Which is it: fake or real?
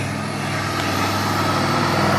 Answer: real